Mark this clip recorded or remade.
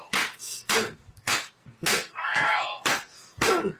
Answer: remade